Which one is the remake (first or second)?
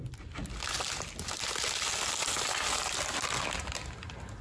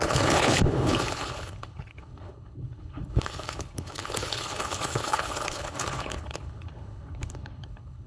second